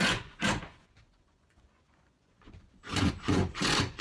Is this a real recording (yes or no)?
no